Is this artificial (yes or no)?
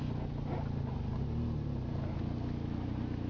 no